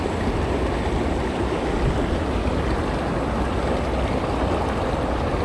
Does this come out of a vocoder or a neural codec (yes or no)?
no